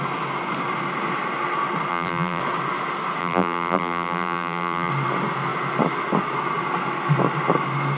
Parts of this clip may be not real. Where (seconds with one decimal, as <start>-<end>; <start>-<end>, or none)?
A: 1.9-2.4; 3.2-4.9